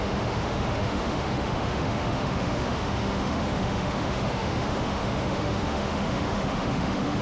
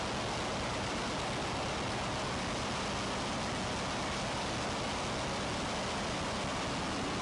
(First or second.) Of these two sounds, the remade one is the first